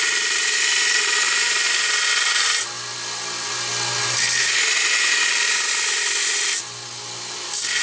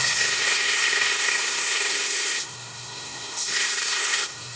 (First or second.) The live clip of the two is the first